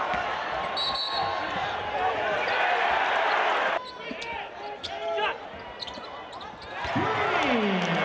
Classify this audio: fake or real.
real